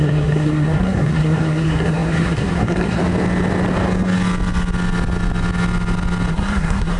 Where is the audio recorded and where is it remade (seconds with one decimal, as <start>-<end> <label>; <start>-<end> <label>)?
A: 0.0-3.0 remade; 3.0-6.3 recorded; 6.3-7.0 remade